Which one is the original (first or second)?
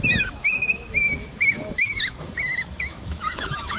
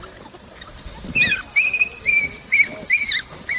second